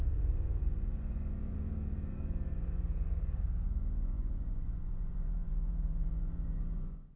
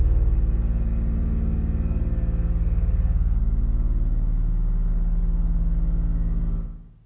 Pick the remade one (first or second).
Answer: first